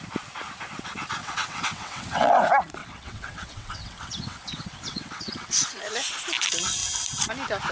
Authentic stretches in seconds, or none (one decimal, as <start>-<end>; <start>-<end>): 0.0-1.2; 2.3-2.8; 5.8-7.7